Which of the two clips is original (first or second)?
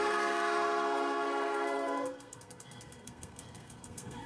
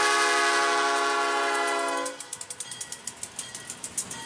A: second